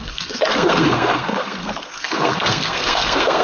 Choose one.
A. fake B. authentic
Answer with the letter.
A